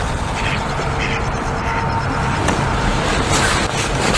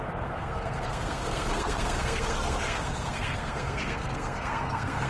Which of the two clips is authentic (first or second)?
first